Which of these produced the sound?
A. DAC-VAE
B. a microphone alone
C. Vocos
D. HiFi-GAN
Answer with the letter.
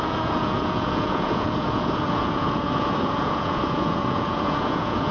C